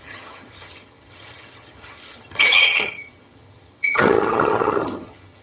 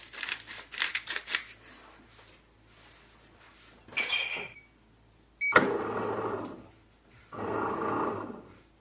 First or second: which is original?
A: second